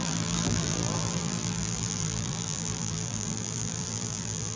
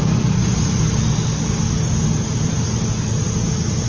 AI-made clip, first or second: first